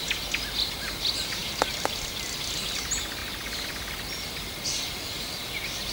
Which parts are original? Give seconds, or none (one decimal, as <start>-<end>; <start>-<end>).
0.0-1.4; 2.0-3.2; 5.5-5.9